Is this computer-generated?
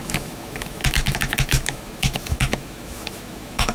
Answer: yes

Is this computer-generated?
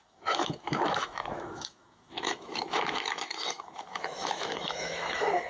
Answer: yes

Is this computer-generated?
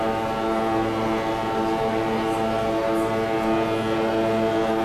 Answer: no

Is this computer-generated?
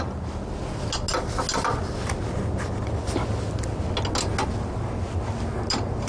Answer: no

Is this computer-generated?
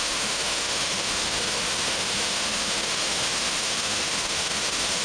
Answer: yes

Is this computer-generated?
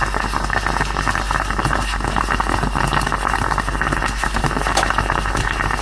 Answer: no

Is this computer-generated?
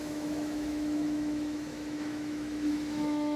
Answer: yes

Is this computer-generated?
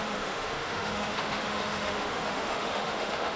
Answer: yes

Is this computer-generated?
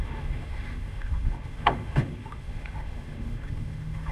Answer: yes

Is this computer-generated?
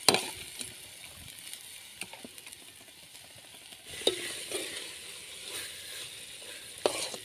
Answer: no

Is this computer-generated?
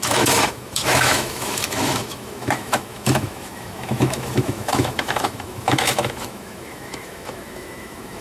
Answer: yes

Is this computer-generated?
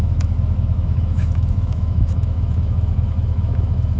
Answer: yes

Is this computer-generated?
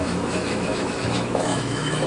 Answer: yes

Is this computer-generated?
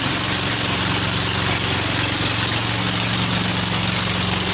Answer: no